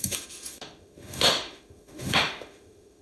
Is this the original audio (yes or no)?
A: no